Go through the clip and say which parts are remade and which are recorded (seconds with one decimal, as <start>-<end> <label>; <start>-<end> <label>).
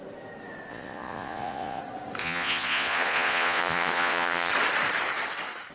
0.0-0.7 recorded; 0.7-1.8 remade; 1.8-2.2 recorded; 2.2-4.5 remade; 4.5-5.7 recorded